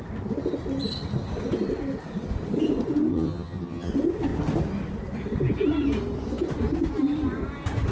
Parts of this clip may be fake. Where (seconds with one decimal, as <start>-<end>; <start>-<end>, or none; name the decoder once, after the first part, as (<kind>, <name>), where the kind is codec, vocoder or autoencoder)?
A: 3.1-3.9 (vocoder, HiFi-GAN)

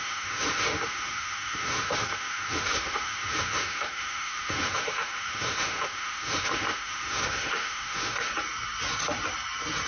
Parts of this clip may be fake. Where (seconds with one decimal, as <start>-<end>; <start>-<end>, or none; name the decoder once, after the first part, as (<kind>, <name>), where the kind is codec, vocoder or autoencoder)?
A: 0.0-8.3 (autoencoder, DAC-VAE)

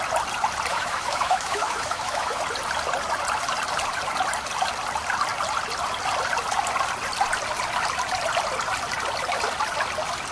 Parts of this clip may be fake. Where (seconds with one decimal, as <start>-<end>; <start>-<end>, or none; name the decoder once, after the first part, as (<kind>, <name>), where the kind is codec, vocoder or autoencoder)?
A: 0.7-2.4 (autoencoder, DAC-VAE)

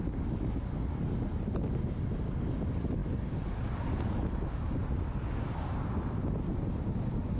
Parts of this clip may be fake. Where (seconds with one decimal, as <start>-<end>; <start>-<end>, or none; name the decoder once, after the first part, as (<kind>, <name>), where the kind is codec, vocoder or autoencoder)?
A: none

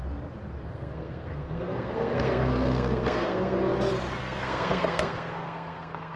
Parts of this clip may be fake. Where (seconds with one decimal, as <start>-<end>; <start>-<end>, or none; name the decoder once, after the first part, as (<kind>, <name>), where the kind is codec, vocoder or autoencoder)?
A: 0.7-3.7 (codec, SNAC); 4.2-6.2

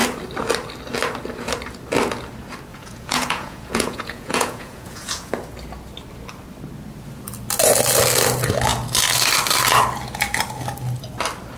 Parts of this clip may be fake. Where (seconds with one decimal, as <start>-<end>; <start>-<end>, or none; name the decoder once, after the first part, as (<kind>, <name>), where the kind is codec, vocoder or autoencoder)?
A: 2.7-5.3 (vocoder, Vocos)